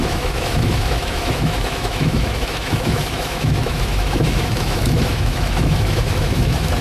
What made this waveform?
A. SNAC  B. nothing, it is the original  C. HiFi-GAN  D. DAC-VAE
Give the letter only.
D